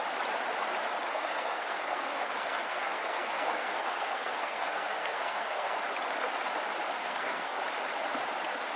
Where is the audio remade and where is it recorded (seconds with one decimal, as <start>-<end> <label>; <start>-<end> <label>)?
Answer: 0.0-1.1 recorded; 1.1-5.8 remade; 5.8-7.0 recorded; 7.0-7.6 remade; 7.6-8.8 recorded